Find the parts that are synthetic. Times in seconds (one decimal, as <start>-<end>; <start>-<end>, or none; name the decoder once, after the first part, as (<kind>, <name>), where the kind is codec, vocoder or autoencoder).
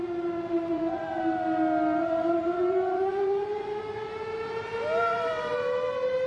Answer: 0.7-1.2 (vocoder, Vocos); 2.0-3.8